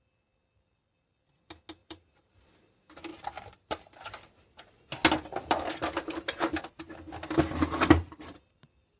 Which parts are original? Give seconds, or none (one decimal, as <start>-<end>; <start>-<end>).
0.0-1.8; 2.4-3.1; 3.9-9.0